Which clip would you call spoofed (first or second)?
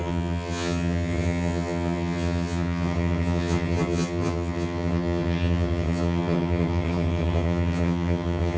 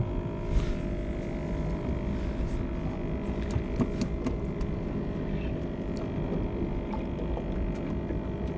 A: first